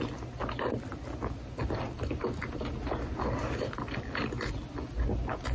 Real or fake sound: real